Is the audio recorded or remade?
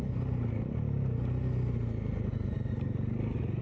recorded